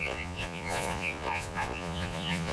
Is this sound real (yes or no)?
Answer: no